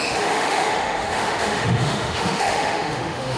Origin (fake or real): fake